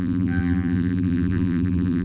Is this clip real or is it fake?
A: fake